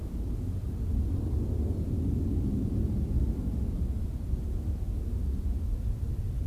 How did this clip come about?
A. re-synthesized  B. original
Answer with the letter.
B